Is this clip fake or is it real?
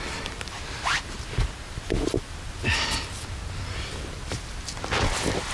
real